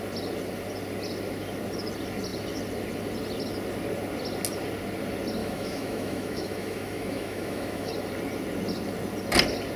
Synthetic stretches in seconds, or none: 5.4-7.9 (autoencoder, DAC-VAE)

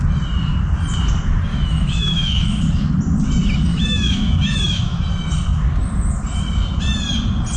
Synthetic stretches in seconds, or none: 1.5-2.6 (autoencoder, DAC-VAE); 3.7-5.0